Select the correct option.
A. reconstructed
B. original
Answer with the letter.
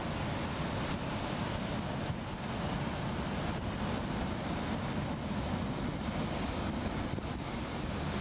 B